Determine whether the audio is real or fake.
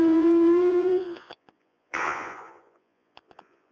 fake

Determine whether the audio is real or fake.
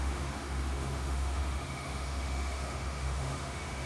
fake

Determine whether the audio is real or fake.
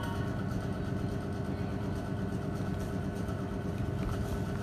real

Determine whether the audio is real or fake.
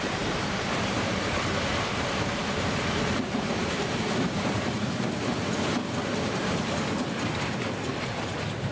fake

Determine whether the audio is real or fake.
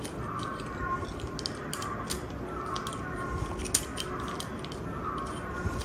real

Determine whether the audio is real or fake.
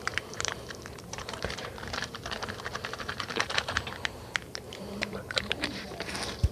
fake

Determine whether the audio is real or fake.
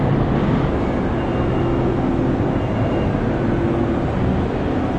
real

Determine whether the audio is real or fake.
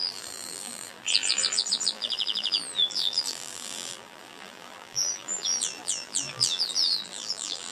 fake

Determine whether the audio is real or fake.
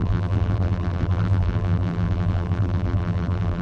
fake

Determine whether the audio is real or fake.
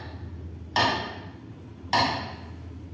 real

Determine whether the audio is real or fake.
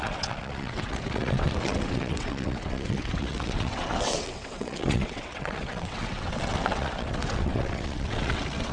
fake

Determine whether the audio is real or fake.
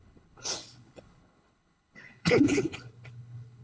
fake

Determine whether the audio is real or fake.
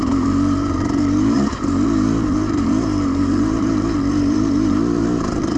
fake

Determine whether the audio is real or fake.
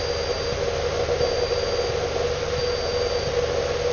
real